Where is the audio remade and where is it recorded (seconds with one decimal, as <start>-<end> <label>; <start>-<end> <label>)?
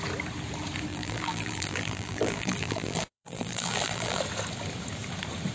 0.0-0.9 recorded; 0.9-4.2 remade; 4.2-5.5 recorded